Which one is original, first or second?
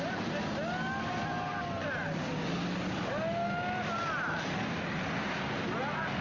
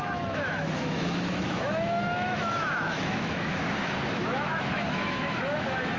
first